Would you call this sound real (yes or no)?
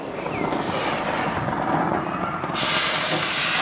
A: yes